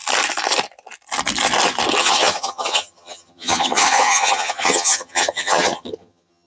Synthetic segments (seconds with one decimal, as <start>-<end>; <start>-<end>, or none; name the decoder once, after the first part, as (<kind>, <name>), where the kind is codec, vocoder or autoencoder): 2.0-6.5 (vocoder, HiFi-GAN)